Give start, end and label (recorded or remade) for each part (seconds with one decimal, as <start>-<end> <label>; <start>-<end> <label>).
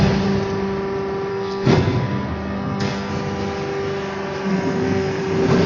0.0-1.3 recorded; 1.3-3.1 remade; 3.1-4.5 recorded; 4.5-5.2 remade; 5.2-5.7 recorded